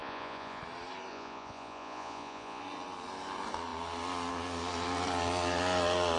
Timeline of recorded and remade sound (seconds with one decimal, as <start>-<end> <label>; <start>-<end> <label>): 0.0-0.6 remade; 0.6-1.1 recorded; 1.1-2.6 remade; 2.6-6.2 recorded

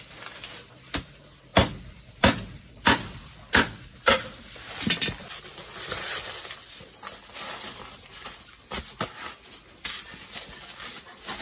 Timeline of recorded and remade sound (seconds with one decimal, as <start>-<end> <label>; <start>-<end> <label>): 0.0-11.4 recorded